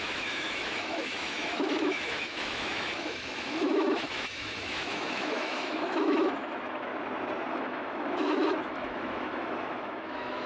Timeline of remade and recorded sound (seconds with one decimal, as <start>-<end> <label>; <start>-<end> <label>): 0.0-6.9 remade; 6.9-7.5 recorded; 7.5-10.5 remade